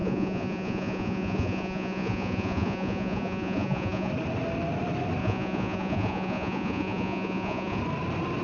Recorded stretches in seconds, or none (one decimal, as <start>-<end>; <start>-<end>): 4.1-5.2; 7.8-8.4